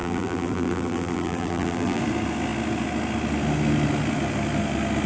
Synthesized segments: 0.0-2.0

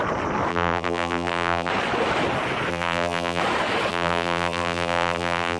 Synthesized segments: 0.5-1.7; 2.7-3.4; 3.9-5.6